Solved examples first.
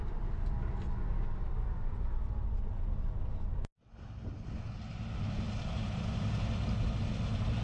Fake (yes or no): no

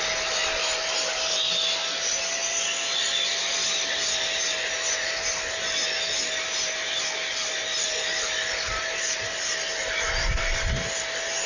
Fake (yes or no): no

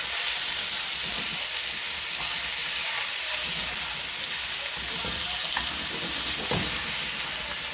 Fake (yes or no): no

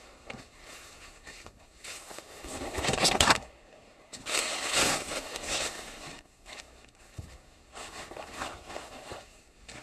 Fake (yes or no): yes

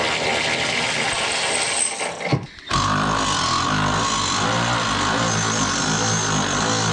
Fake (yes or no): no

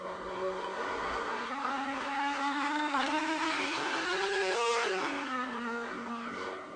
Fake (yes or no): yes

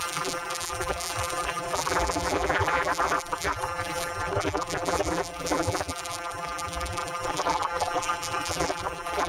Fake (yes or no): yes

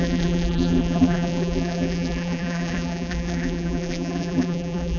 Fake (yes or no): yes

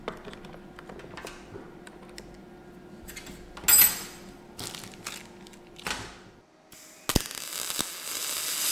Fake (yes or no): no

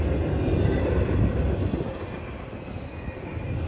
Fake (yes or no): no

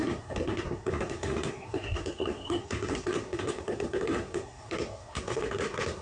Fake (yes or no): yes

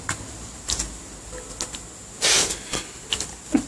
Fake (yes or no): no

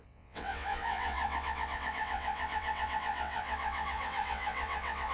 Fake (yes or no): yes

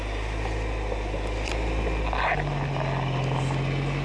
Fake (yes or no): no